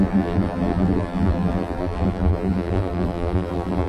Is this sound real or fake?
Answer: fake